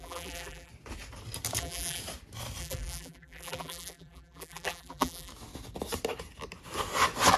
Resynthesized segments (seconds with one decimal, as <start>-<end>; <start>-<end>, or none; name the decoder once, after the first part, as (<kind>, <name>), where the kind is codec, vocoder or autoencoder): 0.0-0.7 (vocoder, BigVGAN v2); 1.6-2.0; 2.6-5.3